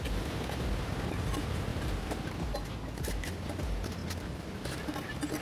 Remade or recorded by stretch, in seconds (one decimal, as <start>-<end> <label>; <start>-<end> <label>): 0.0-1.7 recorded; 1.7-2.2 remade; 2.2-4.0 recorded; 4.0-4.5 remade; 4.5-5.4 recorded